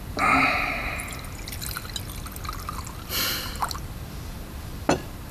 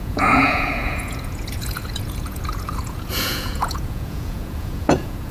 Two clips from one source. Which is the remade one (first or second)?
second